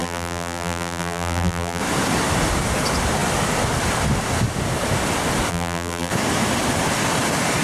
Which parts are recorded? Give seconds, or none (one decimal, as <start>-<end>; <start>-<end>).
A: 1.8-5.5; 6.1-7.6